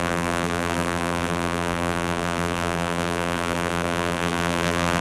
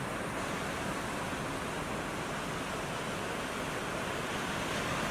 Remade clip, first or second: first